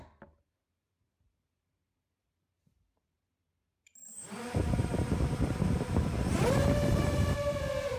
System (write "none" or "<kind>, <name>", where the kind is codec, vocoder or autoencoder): vocoder, BigVGAN v2